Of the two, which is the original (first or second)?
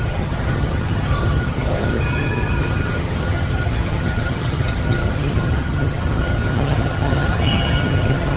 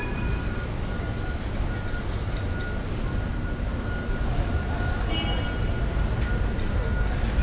second